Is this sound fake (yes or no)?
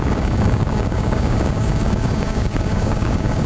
yes